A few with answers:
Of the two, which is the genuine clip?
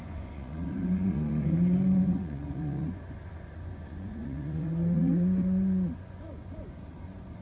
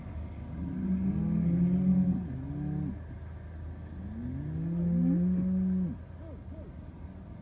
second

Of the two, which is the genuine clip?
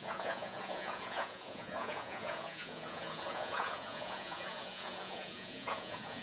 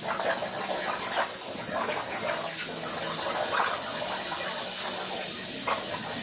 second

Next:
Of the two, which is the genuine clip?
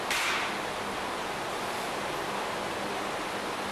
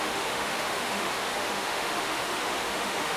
first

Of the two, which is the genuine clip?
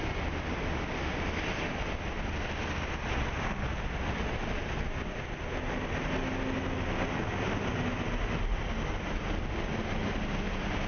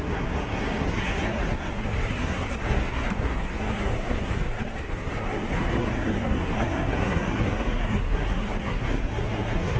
first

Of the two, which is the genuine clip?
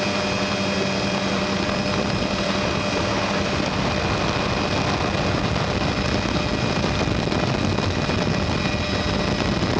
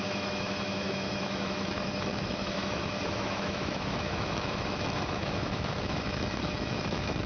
first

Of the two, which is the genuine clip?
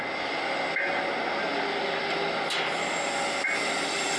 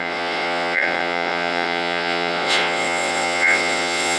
first